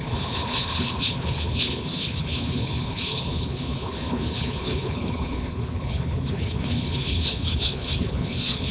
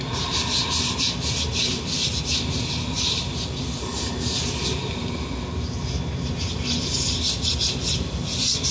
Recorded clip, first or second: second